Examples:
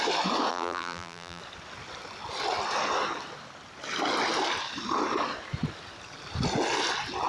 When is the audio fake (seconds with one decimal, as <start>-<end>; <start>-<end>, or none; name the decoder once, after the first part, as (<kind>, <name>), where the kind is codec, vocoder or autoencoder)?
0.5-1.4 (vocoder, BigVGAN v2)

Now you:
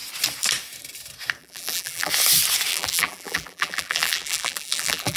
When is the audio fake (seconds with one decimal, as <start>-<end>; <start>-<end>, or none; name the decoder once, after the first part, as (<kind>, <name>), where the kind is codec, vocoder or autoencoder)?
1.4-2.1 (vocoder, BigVGAN v2); 2.7-5.2

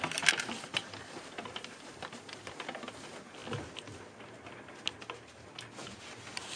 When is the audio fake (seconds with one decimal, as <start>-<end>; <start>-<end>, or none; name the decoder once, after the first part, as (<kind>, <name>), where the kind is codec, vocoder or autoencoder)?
0.7-2.2 (vocoder, BigVGAN v2)

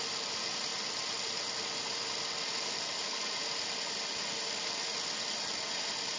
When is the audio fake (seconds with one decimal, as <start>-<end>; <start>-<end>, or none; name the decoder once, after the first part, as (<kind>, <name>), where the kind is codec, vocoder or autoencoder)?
none

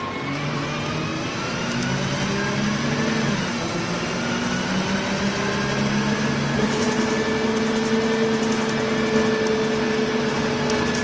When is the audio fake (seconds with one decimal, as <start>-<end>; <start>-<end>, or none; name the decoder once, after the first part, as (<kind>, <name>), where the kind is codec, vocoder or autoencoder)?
none